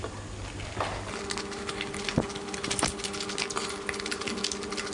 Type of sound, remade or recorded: recorded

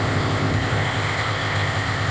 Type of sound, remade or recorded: remade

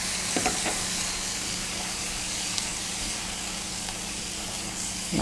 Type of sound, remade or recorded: remade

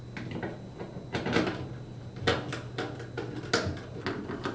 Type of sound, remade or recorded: recorded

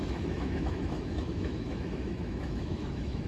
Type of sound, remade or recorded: remade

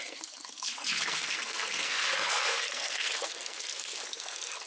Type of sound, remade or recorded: remade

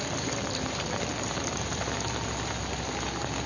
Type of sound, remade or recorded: recorded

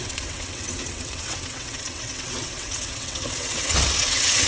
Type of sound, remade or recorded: remade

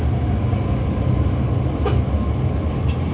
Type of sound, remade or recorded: recorded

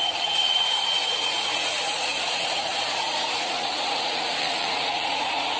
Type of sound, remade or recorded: remade